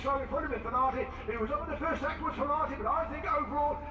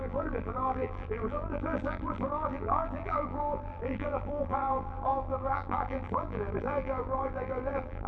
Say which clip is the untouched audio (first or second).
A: first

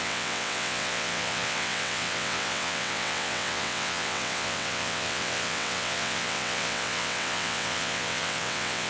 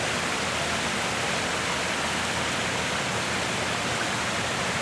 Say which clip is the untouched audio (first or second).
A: second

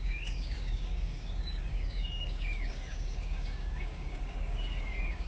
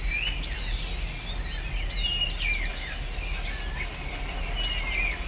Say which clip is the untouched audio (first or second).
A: second